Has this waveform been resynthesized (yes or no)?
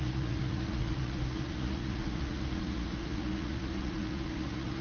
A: yes